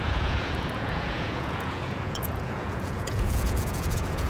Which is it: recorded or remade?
remade